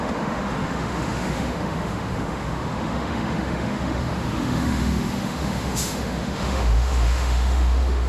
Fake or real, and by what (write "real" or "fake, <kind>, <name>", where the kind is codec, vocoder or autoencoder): fake, autoencoder, DAC-VAE